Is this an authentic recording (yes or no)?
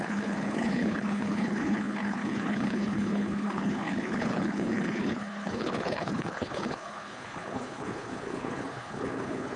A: no